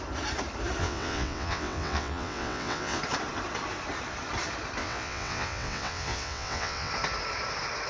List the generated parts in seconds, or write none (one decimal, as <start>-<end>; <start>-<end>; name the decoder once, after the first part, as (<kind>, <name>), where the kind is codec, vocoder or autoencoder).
0.8-3.0 (vocoder, WaveNeXt); 4.8-6.9